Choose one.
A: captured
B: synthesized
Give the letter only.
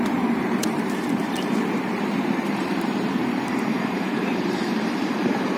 B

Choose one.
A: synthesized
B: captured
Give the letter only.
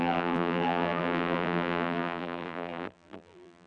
A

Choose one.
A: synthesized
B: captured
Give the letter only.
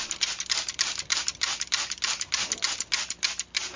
A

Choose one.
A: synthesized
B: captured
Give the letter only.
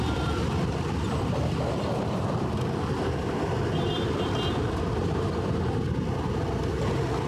A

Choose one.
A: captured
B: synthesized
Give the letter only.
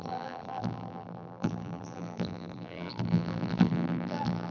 B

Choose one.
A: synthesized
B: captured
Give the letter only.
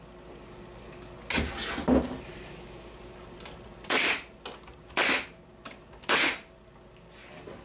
B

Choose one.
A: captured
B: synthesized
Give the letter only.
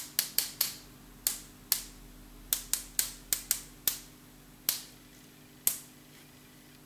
A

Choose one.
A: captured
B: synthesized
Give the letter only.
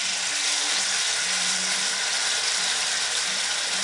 B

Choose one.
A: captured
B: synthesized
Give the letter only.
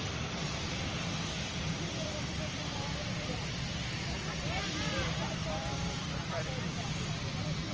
B